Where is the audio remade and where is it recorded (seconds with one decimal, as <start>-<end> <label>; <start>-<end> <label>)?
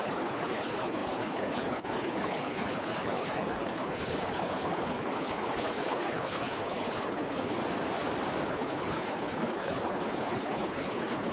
0.0-7.6 remade; 7.6-8.5 recorded; 8.5-11.3 remade